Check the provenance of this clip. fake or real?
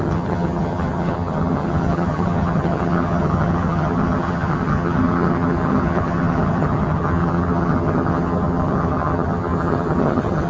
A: fake